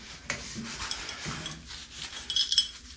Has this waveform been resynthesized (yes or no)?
no